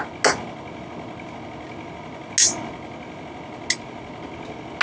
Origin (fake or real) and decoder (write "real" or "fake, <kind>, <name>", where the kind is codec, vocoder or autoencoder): real